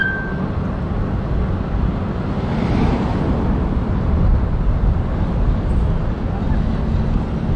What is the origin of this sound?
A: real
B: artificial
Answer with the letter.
A